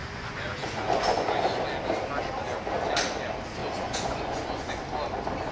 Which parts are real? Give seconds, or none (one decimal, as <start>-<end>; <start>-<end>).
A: 1.6-3.6; 4.7-5.5